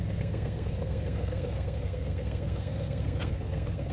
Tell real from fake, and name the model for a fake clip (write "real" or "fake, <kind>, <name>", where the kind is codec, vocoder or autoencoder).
fake, codec, SNAC